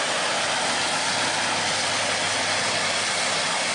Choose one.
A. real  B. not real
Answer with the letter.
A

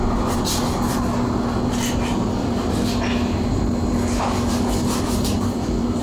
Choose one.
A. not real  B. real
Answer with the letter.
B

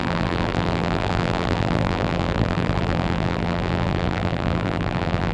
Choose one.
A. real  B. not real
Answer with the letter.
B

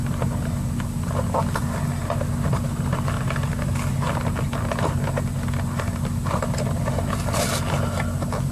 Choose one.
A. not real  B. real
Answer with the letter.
B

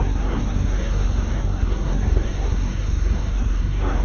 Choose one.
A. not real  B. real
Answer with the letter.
A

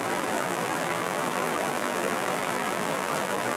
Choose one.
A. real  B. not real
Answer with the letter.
B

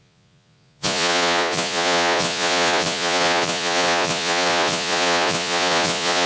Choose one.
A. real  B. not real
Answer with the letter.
B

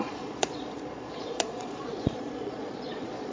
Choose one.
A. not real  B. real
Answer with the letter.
A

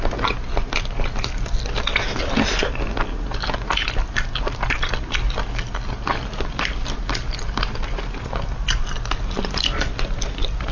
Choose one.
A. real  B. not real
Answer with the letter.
A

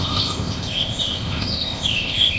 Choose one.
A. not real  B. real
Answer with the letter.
A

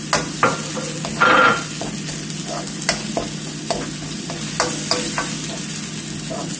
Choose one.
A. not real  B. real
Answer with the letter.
B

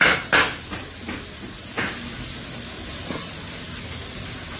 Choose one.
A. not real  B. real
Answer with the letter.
B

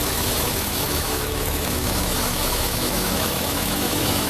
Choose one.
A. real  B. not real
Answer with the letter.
B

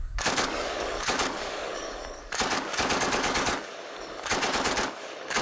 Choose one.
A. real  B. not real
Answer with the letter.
B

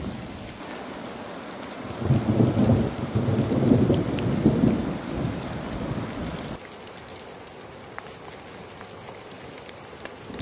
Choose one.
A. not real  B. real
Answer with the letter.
B